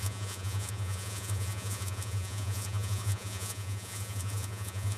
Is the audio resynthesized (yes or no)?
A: yes